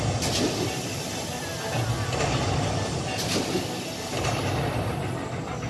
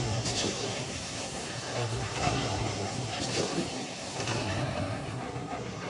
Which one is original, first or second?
first